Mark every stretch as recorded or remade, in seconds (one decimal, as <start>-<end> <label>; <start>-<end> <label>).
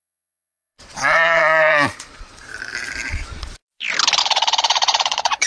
0.0-2.5 remade; 2.5-3.1 recorded; 3.1-3.6 remade; 3.6-4.2 recorded; 4.2-5.5 remade